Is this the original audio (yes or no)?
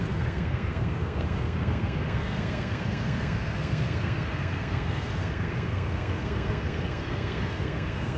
no